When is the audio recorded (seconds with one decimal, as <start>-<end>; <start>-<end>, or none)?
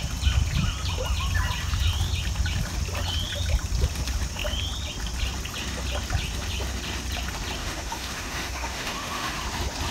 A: 0.0-7.6; 9.4-9.9